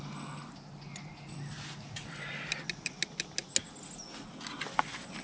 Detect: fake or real real